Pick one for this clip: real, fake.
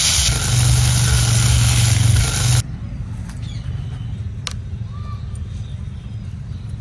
real